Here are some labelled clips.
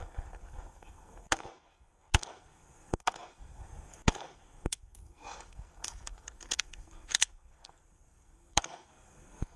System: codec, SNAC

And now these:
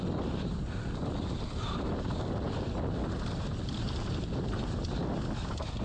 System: none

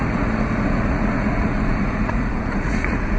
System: vocoder, Vocos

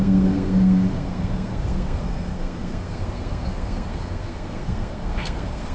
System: codec, SNAC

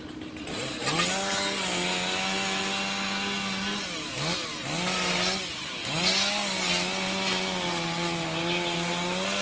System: none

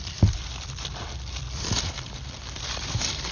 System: vocoder, BigVGAN v2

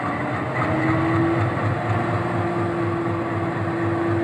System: none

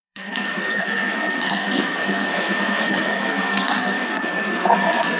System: codec, SNAC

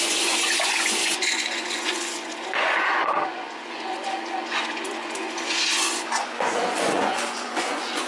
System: vocoder, Vocos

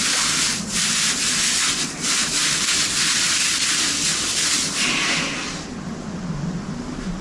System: none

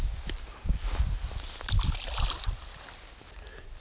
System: none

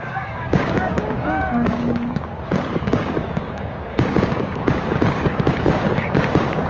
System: codec, DAC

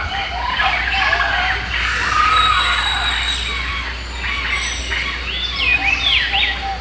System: vocoder, BigVGAN v2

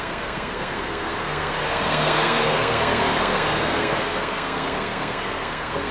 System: codec, SNAC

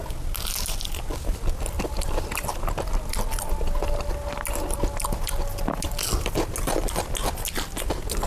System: none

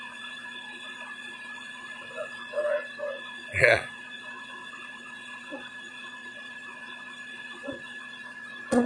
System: vocoder, Vocos